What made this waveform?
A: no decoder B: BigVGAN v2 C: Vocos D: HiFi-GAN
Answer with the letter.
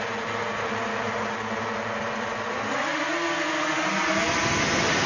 A